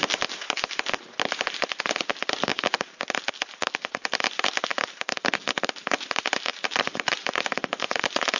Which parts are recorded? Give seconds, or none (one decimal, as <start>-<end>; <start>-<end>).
0.0-2.5; 3.3-4.7; 5.4-6.5; 8.0-8.4